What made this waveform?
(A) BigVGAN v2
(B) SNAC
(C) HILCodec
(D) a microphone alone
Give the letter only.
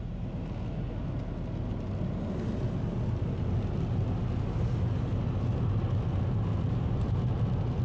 D